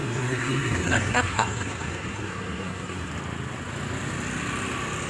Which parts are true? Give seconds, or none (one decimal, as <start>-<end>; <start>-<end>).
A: 3.1-5.1